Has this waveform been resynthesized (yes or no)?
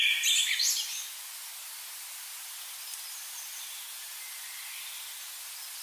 no